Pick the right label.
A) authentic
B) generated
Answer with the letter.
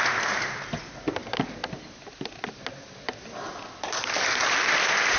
A